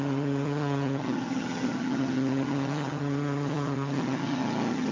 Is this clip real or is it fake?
fake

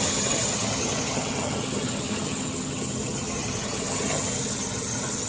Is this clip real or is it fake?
fake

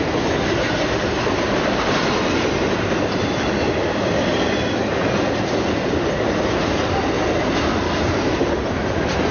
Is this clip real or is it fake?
real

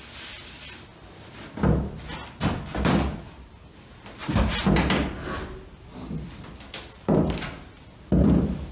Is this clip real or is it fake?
real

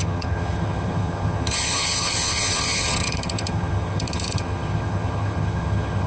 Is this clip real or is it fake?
fake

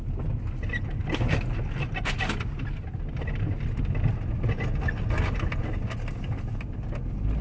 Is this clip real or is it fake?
real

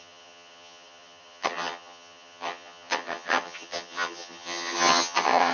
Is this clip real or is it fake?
fake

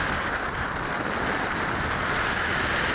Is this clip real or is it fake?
real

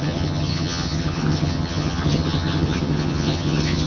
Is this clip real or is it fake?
fake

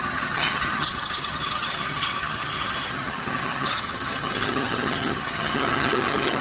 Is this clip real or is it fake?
fake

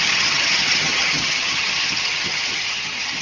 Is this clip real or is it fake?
fake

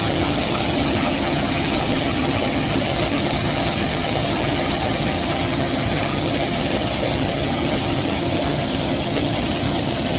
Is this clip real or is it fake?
fake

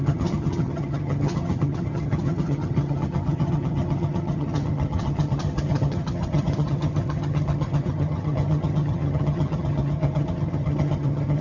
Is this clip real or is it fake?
fake